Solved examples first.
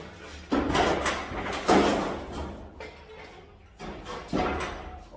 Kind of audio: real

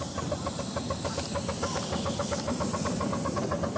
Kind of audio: real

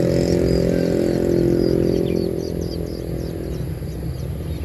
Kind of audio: real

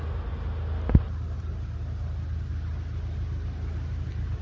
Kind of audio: real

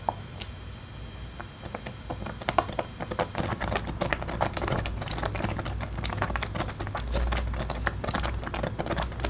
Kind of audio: real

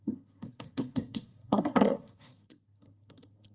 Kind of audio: fake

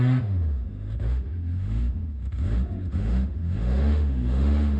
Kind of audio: fake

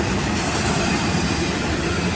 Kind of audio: real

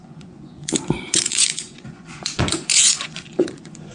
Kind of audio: fake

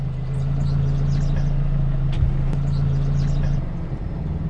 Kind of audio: real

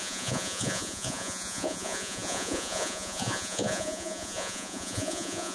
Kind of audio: fake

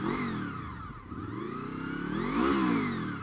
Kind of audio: real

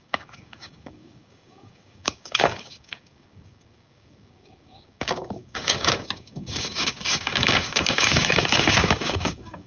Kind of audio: fake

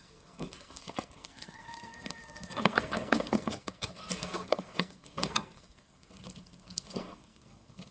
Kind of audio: fake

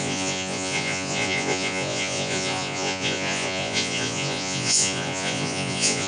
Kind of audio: fake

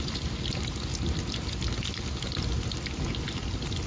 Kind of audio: real